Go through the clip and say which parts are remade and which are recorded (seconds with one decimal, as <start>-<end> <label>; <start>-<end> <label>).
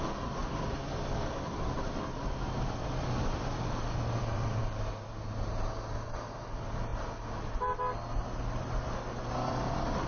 0.0-0.4 recorded; 0.4-4.6 remade; 4.6-10.1 recorded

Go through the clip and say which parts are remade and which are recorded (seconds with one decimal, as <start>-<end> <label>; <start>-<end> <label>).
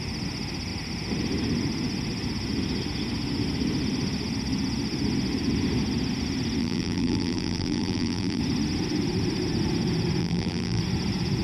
0.0-6.6 recorded; 6.6-8.4 remade; 8.4-10.2 recorded; 10.2-10.8 remade; 10.8-11.4 recorded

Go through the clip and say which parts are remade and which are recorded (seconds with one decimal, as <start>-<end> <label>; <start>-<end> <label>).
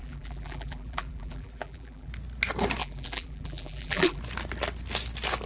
0.0-2.1 remade; 2.1-2.8 recorded; 2.8-4.2 remade; 4.2-5.5 recorded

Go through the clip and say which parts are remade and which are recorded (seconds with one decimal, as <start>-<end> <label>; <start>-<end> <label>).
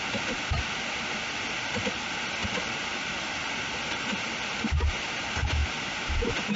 0.0-2.4 recorded; 2.4-3.4 remade; 3.4-5.6 recorded; 5.6-6.6 remade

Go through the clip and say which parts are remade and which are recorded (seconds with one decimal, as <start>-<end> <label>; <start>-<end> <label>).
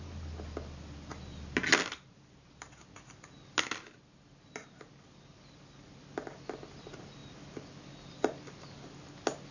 0.0-9.5 recorded